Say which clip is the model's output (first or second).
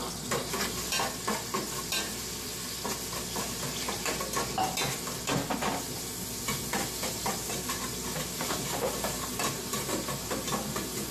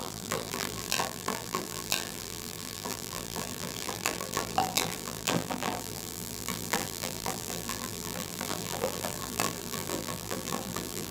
second